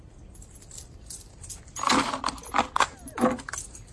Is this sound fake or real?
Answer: real